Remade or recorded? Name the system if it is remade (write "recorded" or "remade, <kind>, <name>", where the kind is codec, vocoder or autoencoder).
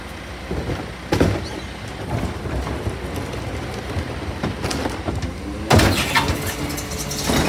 recorded